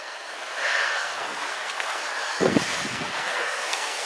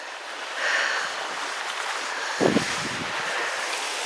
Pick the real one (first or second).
second